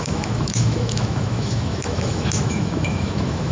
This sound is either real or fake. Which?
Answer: fake